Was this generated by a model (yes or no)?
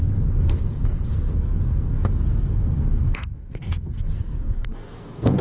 yes